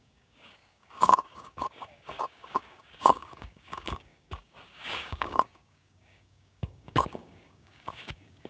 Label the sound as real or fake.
fake